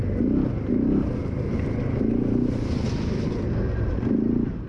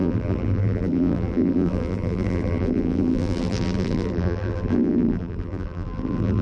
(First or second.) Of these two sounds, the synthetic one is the second